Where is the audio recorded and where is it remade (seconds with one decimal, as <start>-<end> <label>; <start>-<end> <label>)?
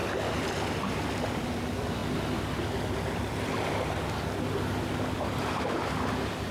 0.0-6.5 recorded